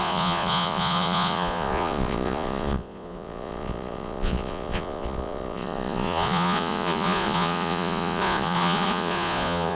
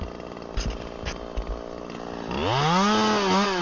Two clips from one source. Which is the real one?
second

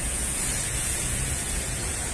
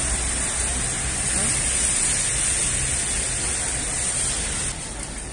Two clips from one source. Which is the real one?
second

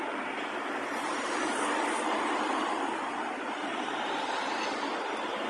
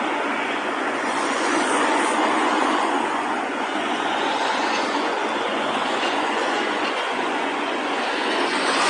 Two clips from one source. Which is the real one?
first